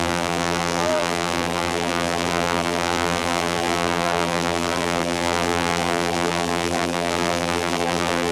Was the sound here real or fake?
fake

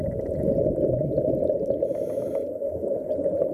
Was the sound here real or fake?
real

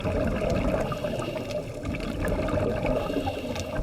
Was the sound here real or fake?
real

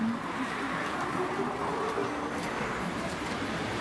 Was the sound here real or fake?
fake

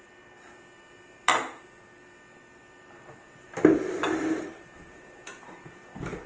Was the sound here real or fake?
fake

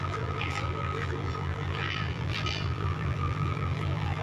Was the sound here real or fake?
fake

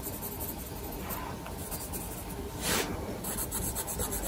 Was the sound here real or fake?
real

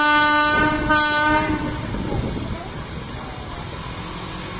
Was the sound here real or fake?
real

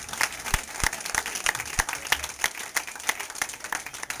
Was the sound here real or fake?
real